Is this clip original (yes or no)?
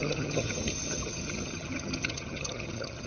no